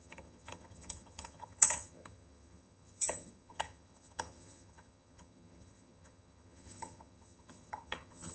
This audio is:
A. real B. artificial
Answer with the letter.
B